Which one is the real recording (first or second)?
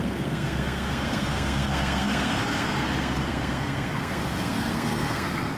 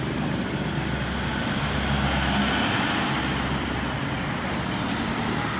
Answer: second